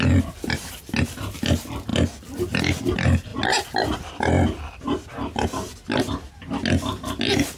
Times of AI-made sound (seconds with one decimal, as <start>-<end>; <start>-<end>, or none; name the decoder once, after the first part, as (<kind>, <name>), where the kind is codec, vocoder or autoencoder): none